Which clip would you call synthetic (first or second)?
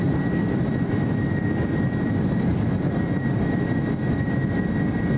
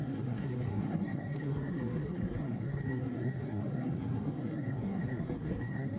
second